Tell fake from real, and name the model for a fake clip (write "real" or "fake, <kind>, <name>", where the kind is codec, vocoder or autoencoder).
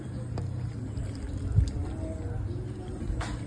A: real